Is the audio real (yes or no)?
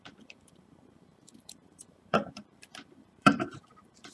no